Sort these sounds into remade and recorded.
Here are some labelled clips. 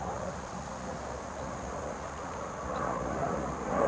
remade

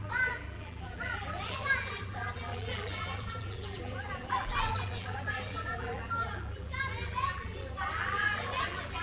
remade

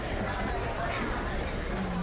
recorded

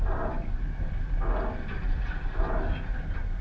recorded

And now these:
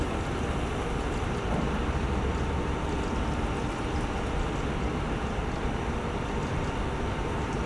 recorded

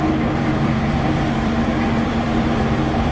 remade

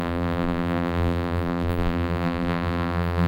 remade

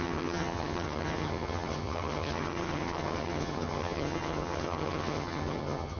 remade